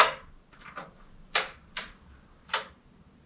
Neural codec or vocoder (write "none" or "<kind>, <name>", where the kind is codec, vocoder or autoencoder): none